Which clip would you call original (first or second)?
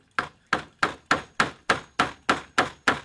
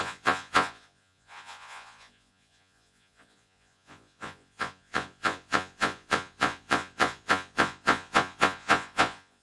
first